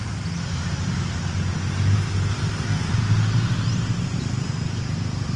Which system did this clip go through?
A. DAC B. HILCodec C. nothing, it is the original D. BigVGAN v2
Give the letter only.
D